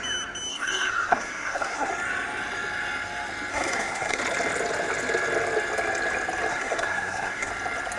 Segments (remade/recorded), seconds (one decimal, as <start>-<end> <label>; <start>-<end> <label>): 0.0-0.5 recorded; 0.5-1.9 remade; 1.9-3.5 recorded; 3.5-4.2 remade; 4.2-6.5 recorded; 6.5-7.5 remade; 7.5-8.0 recorded